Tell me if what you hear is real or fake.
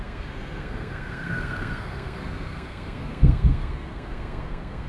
fake